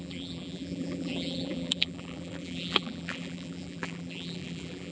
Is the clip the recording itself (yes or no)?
no